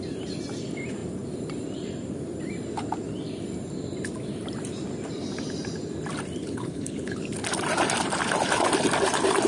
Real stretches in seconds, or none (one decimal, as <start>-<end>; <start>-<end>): 0.0-6.4; 7.2-9.5